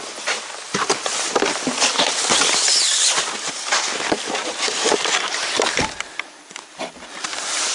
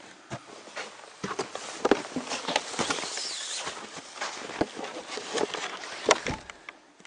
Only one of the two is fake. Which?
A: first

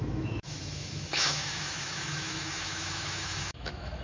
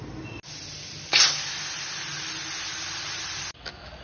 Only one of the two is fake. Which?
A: first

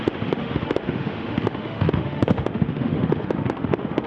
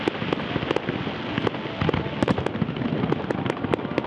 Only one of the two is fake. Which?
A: first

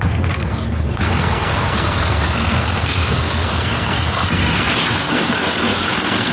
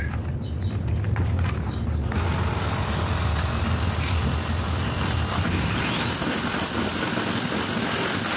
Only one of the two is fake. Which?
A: first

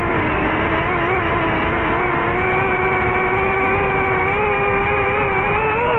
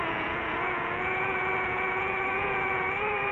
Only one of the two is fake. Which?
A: second